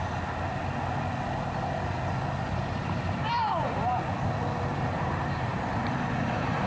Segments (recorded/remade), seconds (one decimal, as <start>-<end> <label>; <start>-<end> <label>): 0.0-2.7 recorded; 2.7-3.9 remade; 3.9-4.8 recorded; 4.8-6.7 remade